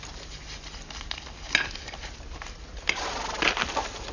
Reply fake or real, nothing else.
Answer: real